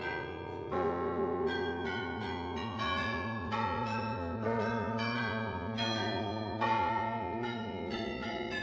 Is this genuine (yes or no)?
no